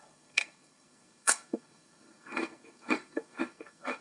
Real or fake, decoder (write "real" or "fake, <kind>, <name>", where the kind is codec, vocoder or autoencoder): fake, codec, SNAC